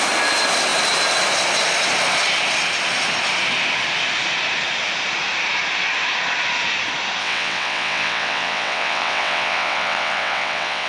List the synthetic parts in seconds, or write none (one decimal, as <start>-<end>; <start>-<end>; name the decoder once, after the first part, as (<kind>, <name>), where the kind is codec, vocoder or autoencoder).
7.2-10.9 (vocoder, WaveNeXt)